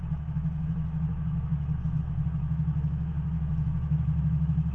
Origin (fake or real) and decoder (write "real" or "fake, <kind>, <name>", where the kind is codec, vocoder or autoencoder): fake, autoencoder, DAC-VAE